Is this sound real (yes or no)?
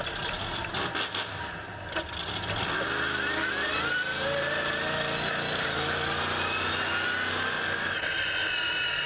yes